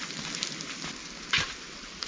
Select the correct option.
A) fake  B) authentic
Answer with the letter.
B